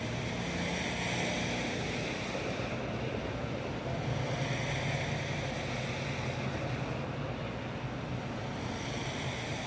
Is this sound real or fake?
real